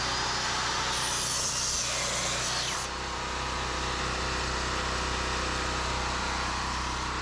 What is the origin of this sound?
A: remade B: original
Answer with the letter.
B